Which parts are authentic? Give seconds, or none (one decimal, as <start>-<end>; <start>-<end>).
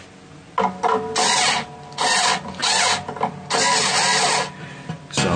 0.0-5.4